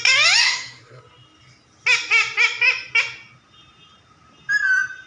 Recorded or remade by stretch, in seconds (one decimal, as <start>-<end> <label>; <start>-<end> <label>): 0.0-0.4 recorded; 0.4-1.0 remade; 1.0-5.1 recorded